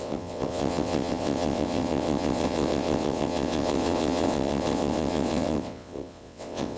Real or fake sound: fake